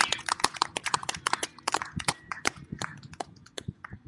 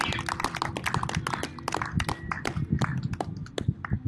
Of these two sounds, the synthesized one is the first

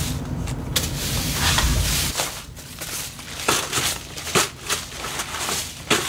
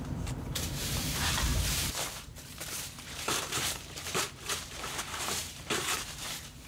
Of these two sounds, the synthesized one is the second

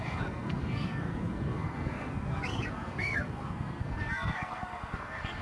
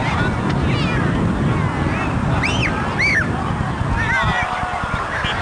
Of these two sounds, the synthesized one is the first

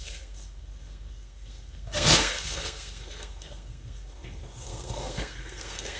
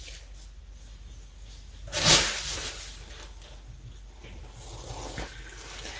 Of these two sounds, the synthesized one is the first